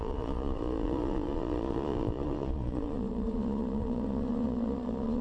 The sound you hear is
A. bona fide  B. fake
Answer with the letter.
B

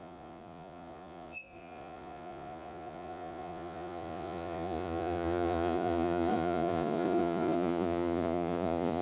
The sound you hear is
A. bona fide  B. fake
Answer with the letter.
B